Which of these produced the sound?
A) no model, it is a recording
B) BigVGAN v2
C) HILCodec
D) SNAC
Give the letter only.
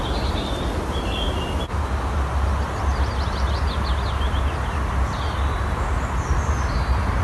A